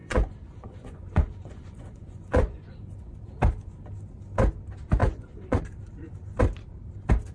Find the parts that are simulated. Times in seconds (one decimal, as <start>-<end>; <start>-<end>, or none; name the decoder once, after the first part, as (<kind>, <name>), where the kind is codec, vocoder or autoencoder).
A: 0.0-3.1 (vocoder, Vocos); 5.0-5.6